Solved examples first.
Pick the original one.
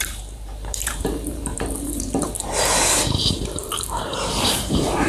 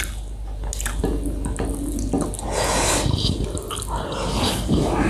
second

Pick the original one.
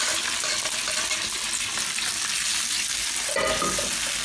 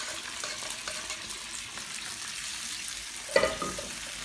first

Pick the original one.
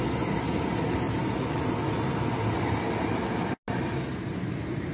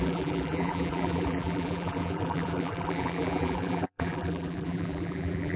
first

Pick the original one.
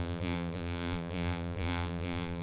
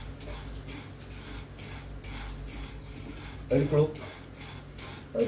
second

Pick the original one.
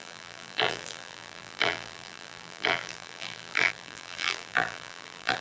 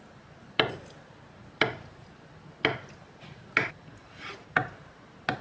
second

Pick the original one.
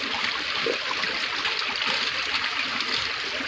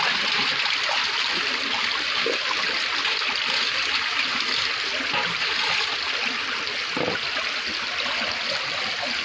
second